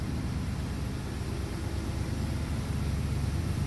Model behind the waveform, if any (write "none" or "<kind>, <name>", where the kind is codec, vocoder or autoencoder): vocoder, BigVGAN v2